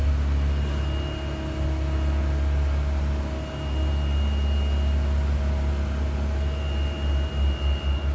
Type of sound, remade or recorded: recorded